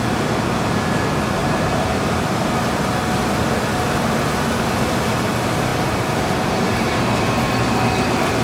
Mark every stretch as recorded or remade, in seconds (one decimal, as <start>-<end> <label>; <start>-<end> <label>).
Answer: 0.0-1.4 recorded; 1.4-2.6 remade; 2.6-5.7 recorded; 5.7-7.4 remade; 7.4-8.4 recorded